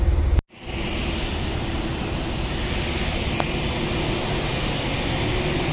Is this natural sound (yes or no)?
yes